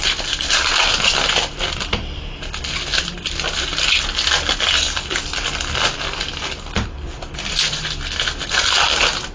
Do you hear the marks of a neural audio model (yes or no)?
no